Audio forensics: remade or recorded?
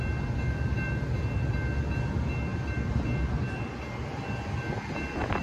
recorded